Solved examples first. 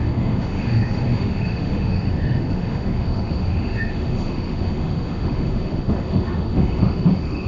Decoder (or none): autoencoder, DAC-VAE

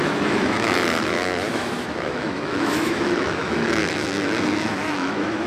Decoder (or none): autoencoder, DAC-VAE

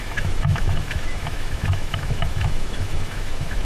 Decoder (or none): autoencoder, DAC-VAE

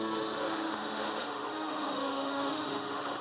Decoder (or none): autoencoder, DAC-VAE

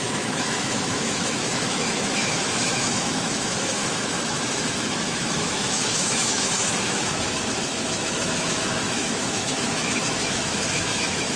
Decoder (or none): autoencoder, DAC-VAE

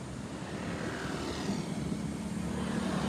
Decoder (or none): none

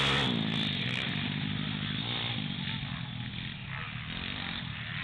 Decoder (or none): none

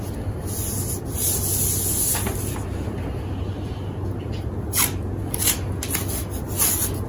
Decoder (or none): none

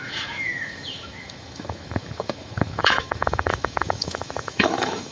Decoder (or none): autoencoder, DAC-VAE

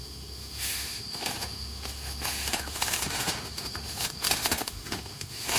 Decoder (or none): autoencoder, DAC-VAE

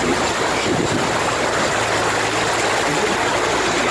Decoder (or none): none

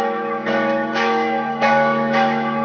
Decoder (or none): autoencoder, DAC-VAE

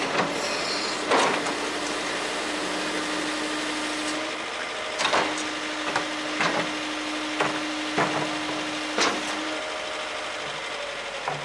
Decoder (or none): none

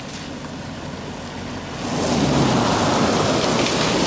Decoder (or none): none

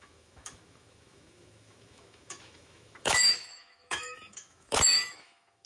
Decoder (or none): autoencoder, DAC-VAE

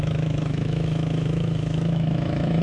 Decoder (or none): autoencoder, DAC-VAE